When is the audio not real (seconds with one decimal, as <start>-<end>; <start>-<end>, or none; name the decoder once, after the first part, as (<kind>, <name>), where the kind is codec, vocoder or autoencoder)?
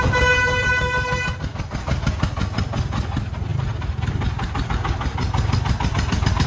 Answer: none